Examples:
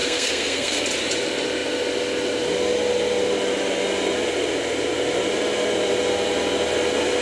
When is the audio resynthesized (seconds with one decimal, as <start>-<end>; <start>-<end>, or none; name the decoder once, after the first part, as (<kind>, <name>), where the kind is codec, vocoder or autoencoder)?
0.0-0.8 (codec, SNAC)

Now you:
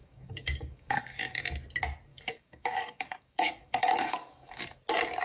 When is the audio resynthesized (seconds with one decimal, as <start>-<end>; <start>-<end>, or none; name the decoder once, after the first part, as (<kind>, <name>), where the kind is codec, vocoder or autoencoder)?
0.0-1.4 (codec, DAC); 2.1-4.6

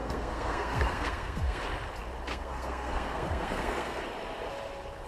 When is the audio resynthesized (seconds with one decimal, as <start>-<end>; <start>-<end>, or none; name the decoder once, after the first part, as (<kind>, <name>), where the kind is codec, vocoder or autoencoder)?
0.0-1.6 (codec, SNAC); 2.3-4.0

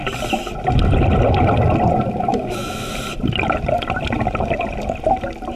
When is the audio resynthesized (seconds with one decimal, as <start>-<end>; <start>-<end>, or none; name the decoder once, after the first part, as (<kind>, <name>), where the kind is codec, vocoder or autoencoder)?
2.3-2.9 (autoencoder, DAC-VAE)